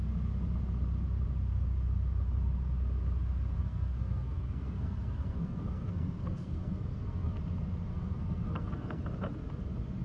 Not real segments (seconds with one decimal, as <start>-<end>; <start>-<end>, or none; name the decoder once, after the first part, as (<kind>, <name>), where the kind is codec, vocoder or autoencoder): 3.6-7.4 (codec, SNAC); 7.9-9.0